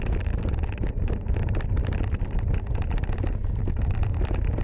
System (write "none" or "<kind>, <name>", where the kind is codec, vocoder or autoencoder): none